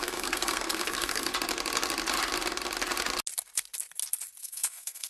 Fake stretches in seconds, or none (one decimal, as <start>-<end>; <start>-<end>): 0.0-1.3; 4.4-5.1